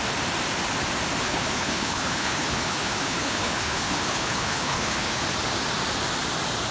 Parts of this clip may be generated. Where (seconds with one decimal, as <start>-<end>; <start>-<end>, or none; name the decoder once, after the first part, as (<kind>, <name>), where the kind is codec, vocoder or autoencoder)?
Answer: 1.2-5.2 (codec, HILCodec)